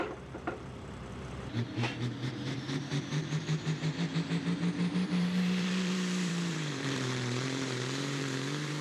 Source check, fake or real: fake